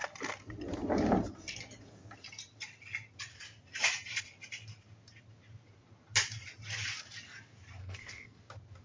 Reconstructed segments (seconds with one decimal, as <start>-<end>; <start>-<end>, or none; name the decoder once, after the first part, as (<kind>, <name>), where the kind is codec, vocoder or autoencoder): 7.8-8.4 (codec, SNAC)